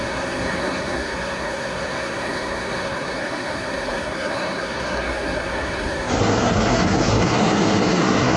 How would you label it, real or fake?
fake